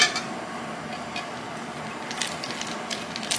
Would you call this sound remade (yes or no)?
no